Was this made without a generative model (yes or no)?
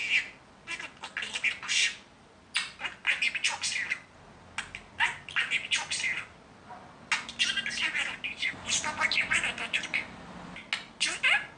yes